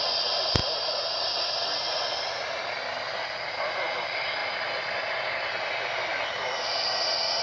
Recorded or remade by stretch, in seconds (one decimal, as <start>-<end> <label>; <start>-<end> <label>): 0.0-7.4 recorded